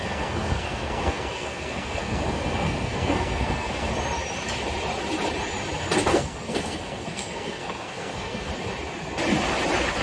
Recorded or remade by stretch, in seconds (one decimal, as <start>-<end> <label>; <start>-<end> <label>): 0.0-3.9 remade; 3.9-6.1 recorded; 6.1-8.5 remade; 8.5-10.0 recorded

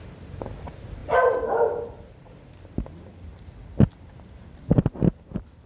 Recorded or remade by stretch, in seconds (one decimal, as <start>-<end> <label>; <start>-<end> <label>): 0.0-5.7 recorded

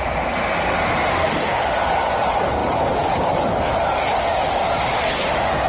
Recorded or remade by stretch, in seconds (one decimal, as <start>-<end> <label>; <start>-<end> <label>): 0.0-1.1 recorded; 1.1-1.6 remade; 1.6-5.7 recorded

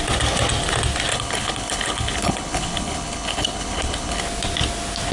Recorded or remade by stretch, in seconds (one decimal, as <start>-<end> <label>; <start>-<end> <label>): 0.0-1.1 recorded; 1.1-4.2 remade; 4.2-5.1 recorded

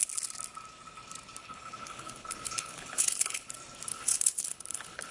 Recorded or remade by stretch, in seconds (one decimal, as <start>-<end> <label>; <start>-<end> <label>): 0.0-1.4 recorded; 1.4-3.5 remade; 3.5-3.9 recorded; 3.9-5.1 remade

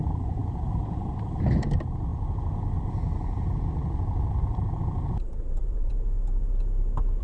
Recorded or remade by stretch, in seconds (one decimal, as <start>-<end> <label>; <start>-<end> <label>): 0.0-2.1 remade; 2.1-4.4 recorded; 4.4-5.9 remade; 5.9-7.2 recorded